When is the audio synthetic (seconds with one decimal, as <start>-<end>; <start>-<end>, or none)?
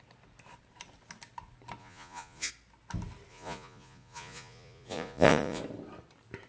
1.8-2.5; 3.3-5.6